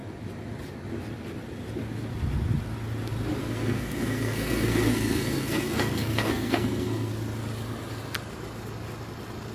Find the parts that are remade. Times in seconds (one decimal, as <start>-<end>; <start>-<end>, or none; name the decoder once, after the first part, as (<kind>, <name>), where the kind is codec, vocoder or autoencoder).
3.4-7.1 (codec, SNAC)